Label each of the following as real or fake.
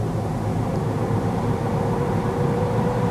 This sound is fake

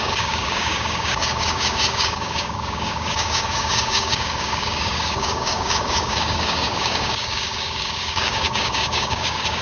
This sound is fake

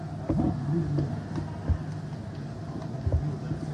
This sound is real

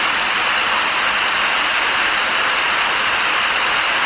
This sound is real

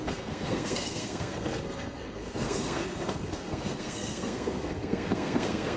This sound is fake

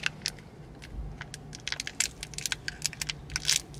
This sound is real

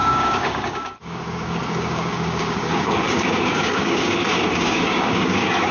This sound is fake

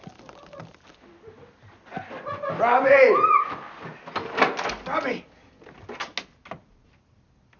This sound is real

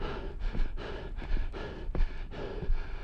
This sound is real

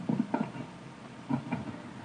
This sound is real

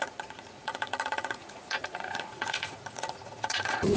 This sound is fake